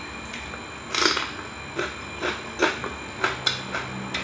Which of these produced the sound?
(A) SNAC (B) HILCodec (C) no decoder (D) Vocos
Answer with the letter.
C